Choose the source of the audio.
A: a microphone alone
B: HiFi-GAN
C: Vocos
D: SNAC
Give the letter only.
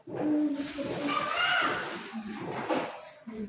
A